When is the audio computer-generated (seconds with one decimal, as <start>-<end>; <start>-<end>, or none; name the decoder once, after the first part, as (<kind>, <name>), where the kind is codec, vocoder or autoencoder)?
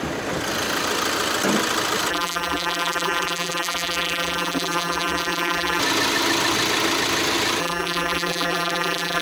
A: 2.1-5.8 (vocoder, BigVGAN v2); 7.6-9.2